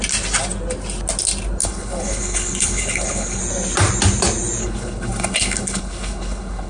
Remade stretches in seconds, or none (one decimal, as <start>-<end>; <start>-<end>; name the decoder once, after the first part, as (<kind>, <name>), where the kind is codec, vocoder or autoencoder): 1.6-3.4 (codec, HILCodec); 4.6-6.7